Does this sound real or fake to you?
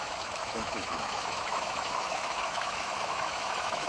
fake